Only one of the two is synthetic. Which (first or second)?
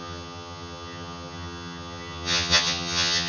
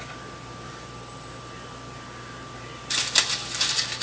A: first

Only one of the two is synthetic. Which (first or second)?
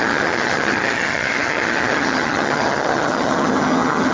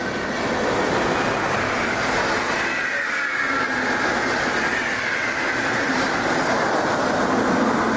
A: first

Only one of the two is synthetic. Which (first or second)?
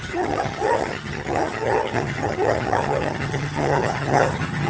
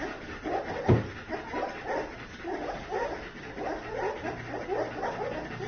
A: first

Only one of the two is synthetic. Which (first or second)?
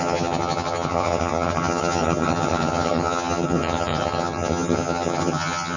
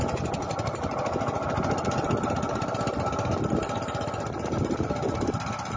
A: first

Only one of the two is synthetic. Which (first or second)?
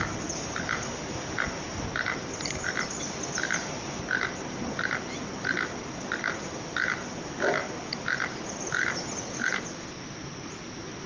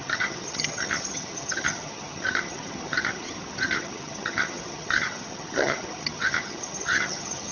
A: second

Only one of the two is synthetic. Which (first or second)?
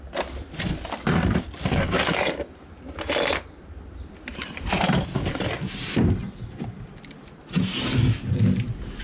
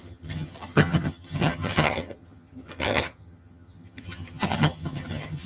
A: second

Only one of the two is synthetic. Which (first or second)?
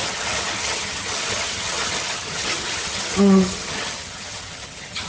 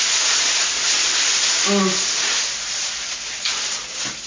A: first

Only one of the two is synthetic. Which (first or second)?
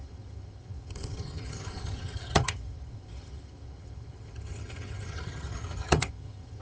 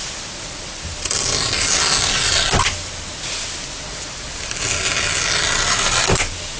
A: first